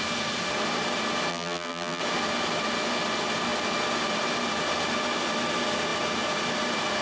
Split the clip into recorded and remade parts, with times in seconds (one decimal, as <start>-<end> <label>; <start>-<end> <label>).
0.0-1.3 recorded; 1.3-2.0 remade; 2.0-7.0 recorded